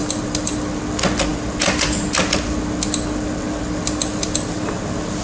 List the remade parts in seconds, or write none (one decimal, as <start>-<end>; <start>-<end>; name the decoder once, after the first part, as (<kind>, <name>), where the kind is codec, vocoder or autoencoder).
0.0-0.8 (vocoder, BigVGAN v2); 1.3-3.3